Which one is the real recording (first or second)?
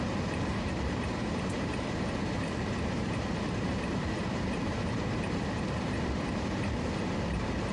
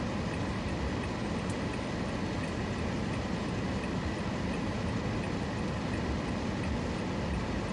second